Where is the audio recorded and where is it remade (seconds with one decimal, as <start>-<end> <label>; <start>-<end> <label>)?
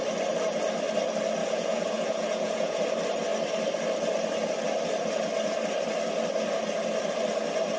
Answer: 0.0-1.4 recorded; 1.4-2.8 remade; 2.8-7.8 recorded